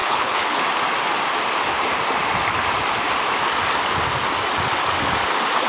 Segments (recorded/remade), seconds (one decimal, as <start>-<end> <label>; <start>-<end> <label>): 0.0-0.6 remade; 0.6-5.7 recorded

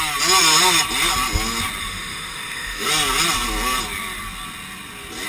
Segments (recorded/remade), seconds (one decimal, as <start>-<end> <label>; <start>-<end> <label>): 0.0-1.8 recorded; 1.8-2.9 remade; 2.9-5.3 recorded